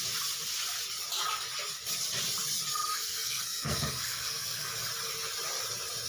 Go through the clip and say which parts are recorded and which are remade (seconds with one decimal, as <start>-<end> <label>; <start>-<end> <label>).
0.0-2.7 recorded; 2.7-4.7 remade; 4.7-6.1 recorded